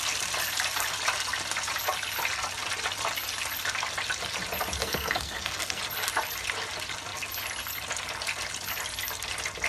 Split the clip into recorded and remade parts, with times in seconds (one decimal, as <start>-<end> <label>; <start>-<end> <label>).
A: 0.0-4.8 recorded; 4.8-5.8 remade; 5.8-9.7 recorded